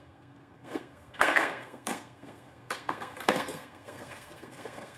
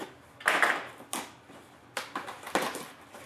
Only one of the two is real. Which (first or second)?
second